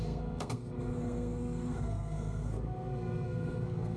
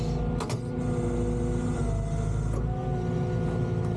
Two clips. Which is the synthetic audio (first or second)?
first